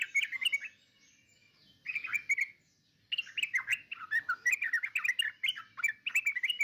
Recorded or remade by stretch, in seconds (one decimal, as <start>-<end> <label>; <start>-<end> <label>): 0.0-6.6 recorded